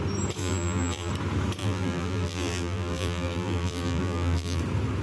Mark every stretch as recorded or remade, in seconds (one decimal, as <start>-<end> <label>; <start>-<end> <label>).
0.0-0.4 recorded; 0.4-1.1 remade; 1.1-1.6 recorded; 1.6-4.6 remade; 4.6-5.0 recorded